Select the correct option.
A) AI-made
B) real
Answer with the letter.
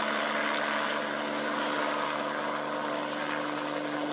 B